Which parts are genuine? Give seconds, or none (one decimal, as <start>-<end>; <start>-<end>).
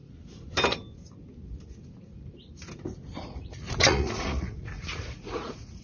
0.0-3.2